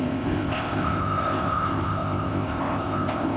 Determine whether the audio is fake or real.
fake